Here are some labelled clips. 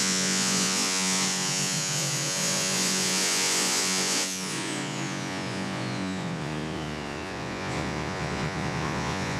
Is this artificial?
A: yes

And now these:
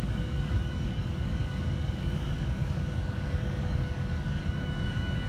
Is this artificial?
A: yes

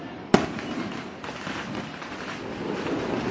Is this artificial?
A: no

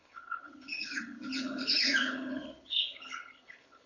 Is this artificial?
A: yes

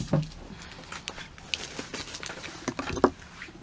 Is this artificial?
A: no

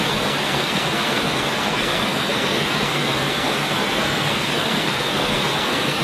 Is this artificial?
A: yes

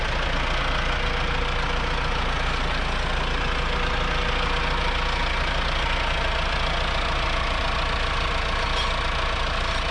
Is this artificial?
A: no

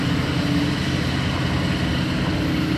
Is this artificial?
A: no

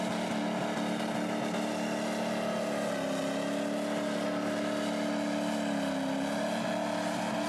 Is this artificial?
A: no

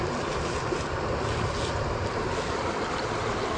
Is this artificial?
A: no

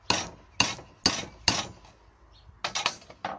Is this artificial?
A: no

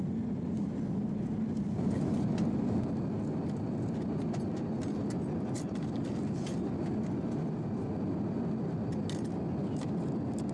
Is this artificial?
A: no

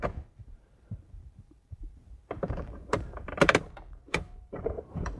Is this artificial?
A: yes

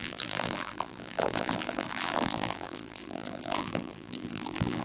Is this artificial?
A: yes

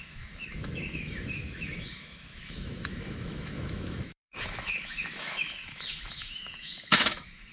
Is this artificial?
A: yes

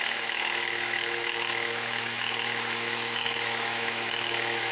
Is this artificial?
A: yes